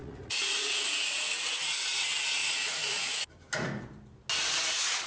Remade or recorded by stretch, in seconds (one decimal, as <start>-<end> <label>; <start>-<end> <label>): 0.0-1.5 remade; 1.5-2.4 recorded; 2.4-3.3 remade; 3.3-5.1 recorded